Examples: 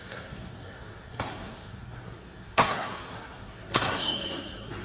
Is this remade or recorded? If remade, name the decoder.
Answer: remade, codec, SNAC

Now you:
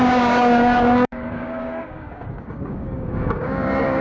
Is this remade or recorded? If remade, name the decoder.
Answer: remade, codec, DAC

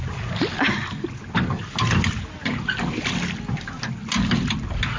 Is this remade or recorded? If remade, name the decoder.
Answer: recorded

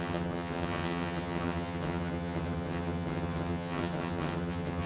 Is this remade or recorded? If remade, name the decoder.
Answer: remade, vocoder, HiFi-GAN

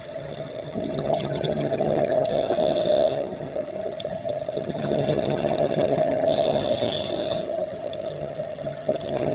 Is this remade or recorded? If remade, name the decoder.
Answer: remade, vocoder, HiFi-GAN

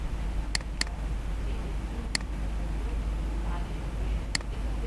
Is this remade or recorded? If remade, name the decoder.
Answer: recorded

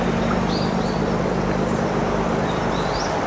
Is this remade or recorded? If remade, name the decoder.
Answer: recorded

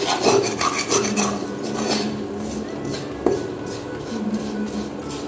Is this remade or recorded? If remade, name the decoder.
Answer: recorded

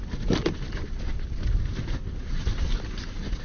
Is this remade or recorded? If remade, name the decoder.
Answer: recorded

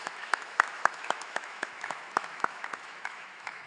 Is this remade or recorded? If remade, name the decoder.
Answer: remade, autoencoder, DAC-VAE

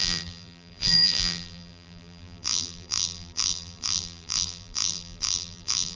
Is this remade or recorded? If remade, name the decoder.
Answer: remade, vocoder, BigVGAN v2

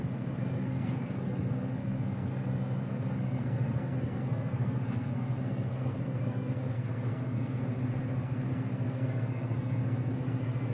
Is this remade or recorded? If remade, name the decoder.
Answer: remade, codec, SNAC